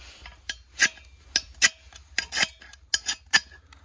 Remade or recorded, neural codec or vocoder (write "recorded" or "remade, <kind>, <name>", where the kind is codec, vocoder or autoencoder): recorded